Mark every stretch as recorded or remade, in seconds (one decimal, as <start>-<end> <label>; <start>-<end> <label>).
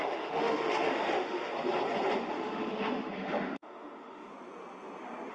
0.0-1.5 remade; 1.5-2.3 recorded; 2.3-4.3 remade; 4.3-5.3 recorded